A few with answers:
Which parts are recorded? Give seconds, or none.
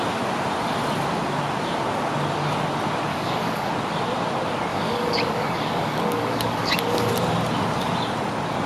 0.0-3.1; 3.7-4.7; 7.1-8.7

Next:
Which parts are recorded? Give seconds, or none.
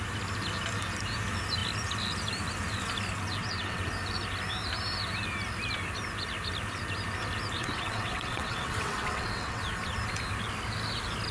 0.0-3.4; 3.9-7.6; 9.6-11.3